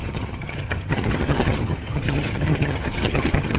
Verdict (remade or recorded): remade